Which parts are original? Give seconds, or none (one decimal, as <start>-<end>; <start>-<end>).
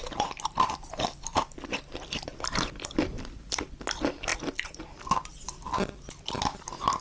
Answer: 0.0-7.0